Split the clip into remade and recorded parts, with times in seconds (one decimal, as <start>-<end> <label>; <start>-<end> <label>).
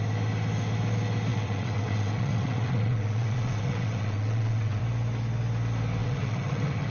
0.0-1.3 recorded; 1.3-4.8 remade; 4.8-6.0 recorded; 6.0-6.9 remade